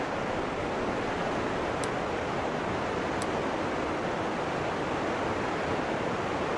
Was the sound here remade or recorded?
recorded